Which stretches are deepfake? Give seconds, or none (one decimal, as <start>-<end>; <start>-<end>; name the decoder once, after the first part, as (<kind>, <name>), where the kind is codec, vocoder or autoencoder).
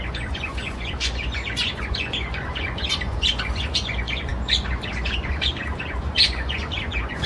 0.0-7.3 (vocoder, Vocos)